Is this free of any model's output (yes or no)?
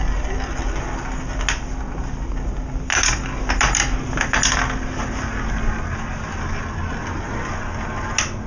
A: yes